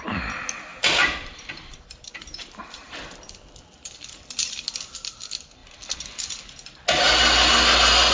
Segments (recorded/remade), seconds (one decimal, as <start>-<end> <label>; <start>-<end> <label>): 0.0-0.7 recorded; 0.7-3.5 remade; 3.5-8.1 recorded